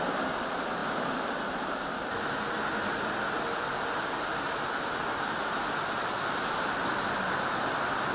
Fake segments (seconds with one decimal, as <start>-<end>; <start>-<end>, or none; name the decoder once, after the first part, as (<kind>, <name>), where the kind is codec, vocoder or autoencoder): none